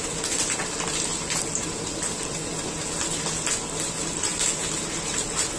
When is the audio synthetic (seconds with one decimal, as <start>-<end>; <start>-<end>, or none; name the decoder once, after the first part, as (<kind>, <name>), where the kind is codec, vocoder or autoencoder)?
none